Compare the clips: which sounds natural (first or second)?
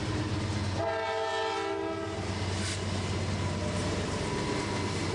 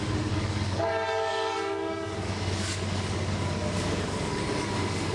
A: first